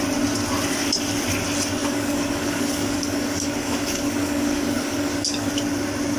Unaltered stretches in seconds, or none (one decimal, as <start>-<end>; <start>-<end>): 0.0-1.8; 5.5-6.2